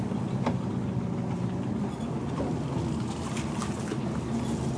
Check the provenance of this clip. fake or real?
real